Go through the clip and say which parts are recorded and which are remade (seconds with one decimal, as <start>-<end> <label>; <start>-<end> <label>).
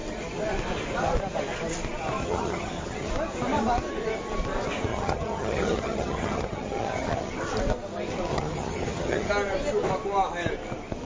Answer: 0.0-2.2 recorded; 2.2-3.1 remade; 3.1-4.9 recorded; 4.9-7.3 remade; 7.3-8.3 recorded; 8.3-9.3 remade; 9.3-11.0 recorded